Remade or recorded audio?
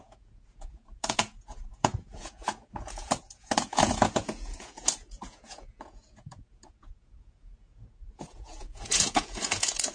remade